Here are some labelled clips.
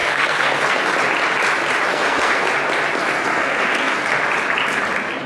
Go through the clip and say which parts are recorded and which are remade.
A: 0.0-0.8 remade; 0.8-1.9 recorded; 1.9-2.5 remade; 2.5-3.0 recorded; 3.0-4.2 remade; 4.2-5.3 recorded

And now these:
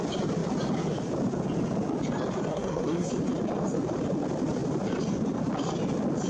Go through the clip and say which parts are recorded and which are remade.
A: 0.0-2.5 recorded; 2.5-3.1 remade; 3.1-6.3 recorded

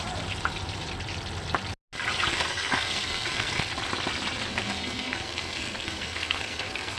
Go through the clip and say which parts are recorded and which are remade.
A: 0.0-2.3 recorded; 2.3-3.6 remade; 3.6-4.5 recorded; 4.5-7.0 remade

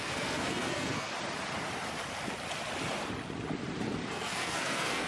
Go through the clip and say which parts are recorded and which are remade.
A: 0.0-1.1 remade; 1.1-4.1 recorded; 4.1-5.1 remade

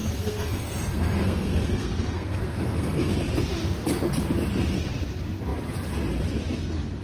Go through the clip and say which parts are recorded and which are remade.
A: 0.0-3.1 remade; 3.1-7.0 recorded